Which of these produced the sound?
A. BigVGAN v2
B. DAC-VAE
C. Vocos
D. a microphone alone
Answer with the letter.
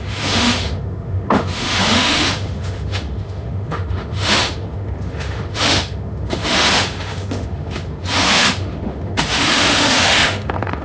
B